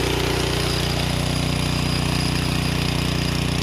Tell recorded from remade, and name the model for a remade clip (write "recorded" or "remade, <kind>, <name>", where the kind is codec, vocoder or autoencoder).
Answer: recorded